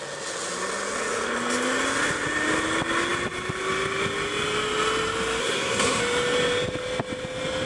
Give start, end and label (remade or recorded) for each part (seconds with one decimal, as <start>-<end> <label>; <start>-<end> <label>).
0.0-5.4 recorded; 5.4-6.0 remade; 6.0-7.7 recorded